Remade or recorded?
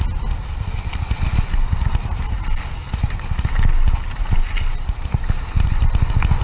recorded